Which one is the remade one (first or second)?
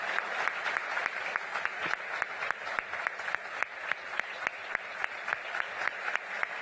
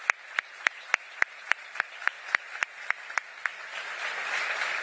second